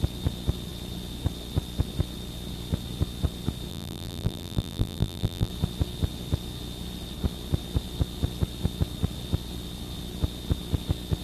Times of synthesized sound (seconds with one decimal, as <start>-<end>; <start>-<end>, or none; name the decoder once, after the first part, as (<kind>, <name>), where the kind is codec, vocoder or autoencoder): 3.7-5.5 (vocoder, BigVGAN v2)